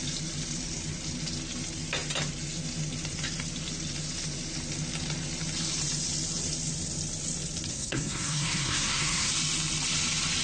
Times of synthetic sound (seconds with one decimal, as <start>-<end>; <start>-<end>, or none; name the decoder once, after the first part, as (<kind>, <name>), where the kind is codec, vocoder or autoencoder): 7.7-9.3 (codec, SNAC)